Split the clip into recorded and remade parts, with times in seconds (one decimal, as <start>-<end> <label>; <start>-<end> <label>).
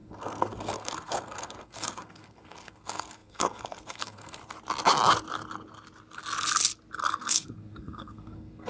0.0-4.4 remade; 4.4-7.2 recorded; 7.2-8.7 remade